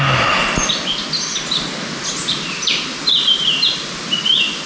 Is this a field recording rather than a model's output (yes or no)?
yes